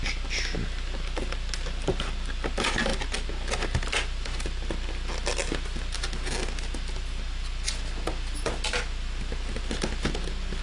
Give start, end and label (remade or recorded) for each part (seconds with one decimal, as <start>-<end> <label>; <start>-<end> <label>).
0.0-10.6 recorded